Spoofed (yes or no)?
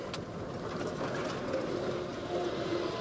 no